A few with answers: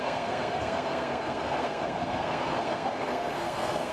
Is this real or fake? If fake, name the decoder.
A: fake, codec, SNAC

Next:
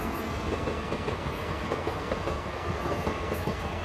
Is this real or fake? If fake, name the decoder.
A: fake, codec, SNAC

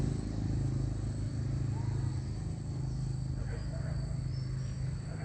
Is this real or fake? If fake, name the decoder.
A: real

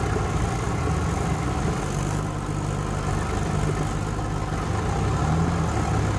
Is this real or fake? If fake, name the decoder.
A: real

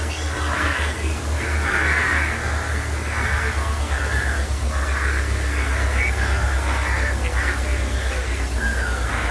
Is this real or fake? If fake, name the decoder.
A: fake, codec, SNAC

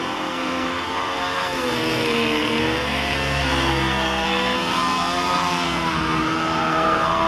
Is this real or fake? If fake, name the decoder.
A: fake, codec, SNAC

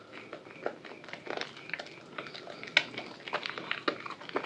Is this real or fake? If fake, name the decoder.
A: real